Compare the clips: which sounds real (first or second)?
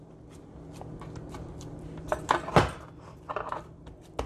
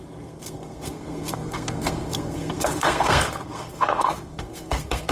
first